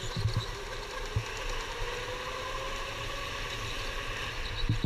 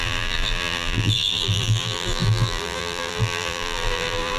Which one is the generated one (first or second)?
second